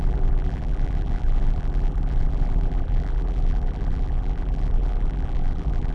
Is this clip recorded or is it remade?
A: remade